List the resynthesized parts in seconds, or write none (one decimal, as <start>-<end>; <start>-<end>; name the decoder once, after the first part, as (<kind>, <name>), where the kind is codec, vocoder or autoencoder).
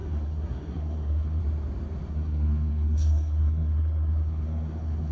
0.0-1.4 (codec, SNAC); 2.1-5.1